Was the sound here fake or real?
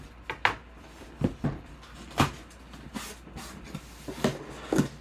real